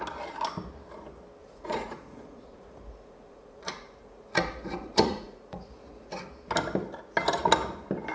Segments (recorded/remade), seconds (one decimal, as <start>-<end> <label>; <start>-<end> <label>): 0.0-1.4 recorded; 1.4-6.2 remade; 6.2-8.1 recorded